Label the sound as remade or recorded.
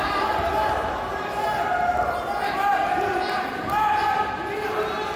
recorded